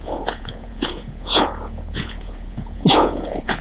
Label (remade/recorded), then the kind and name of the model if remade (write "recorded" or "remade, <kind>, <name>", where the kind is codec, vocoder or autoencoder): remade, vocoder, Vocos